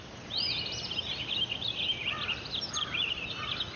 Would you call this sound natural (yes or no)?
yes